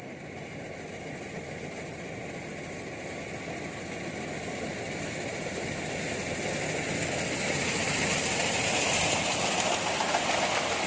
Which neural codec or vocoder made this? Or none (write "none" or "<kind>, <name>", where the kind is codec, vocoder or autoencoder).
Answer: none